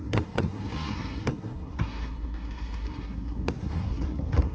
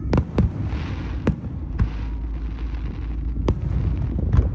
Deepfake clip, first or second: first